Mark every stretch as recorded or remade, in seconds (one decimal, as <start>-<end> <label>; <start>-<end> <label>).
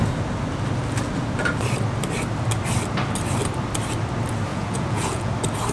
0.0-4.5 recorded; 4.5-5.3 remade; 5.3-5.7 recorded